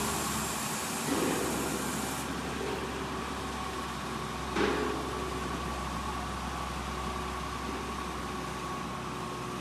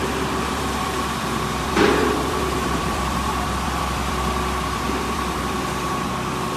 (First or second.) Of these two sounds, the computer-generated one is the second